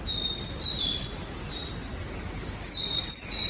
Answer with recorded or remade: recorded